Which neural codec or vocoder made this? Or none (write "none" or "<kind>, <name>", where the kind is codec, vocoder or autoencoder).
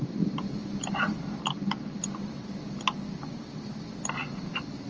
none